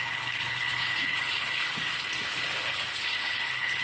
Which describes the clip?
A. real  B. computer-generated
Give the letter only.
B